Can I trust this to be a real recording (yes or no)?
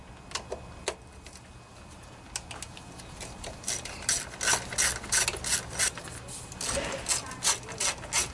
yes